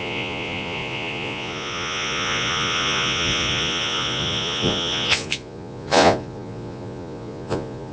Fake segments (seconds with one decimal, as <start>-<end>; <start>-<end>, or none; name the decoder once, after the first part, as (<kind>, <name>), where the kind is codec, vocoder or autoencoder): 0.0-7.9 (vocoder, Vocos)